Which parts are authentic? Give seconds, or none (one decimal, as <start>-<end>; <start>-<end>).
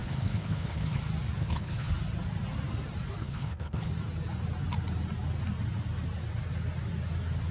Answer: 1.0-1.4; 1.9-3.2; 3.9-7.5